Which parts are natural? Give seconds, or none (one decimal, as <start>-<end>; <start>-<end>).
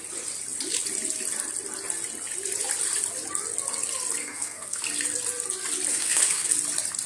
0.0-4.2; 4.8-5.9; 6.5-7.1